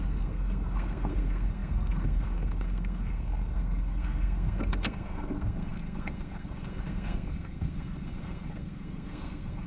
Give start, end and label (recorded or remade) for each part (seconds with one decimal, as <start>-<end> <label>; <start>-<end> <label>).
0.0-9.7 remade